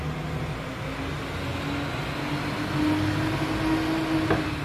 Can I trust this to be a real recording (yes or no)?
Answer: yes